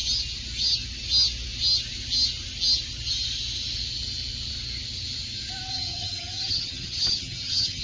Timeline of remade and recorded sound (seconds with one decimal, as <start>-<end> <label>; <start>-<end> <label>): 0.0-5.7 recorded; 5.7-7.8 remade